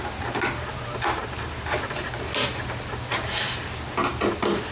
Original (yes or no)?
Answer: yes